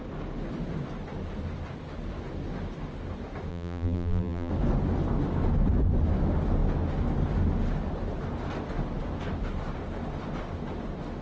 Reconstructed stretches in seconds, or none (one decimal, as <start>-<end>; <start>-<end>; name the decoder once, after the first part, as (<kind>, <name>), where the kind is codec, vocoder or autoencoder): 3.5-4.5 (vocoder, BigVGAN v2)